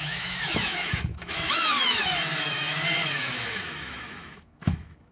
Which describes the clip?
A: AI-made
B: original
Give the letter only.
A